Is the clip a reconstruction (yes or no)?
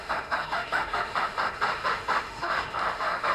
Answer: yes